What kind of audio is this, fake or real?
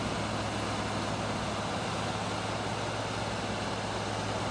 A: real